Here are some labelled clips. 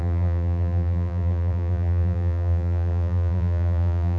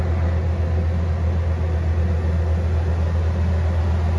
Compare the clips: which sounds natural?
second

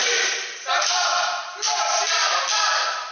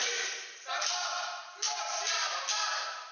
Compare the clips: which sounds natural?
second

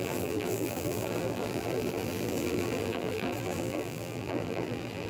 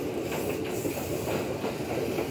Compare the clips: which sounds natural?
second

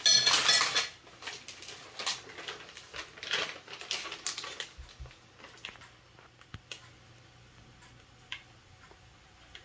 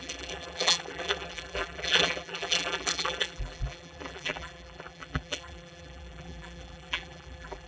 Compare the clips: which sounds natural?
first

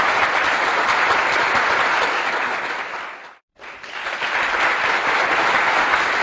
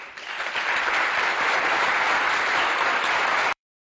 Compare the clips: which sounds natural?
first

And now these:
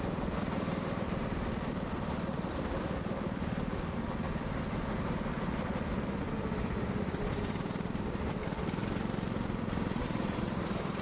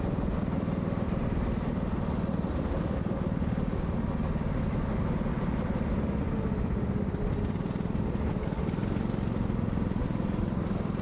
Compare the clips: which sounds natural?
second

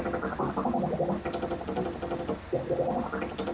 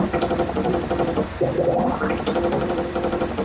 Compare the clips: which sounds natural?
first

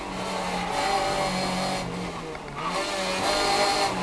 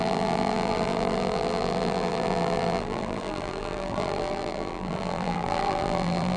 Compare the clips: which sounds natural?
first